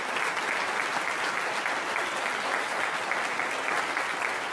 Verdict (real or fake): real